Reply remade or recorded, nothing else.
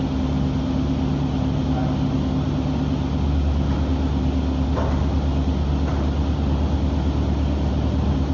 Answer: recorded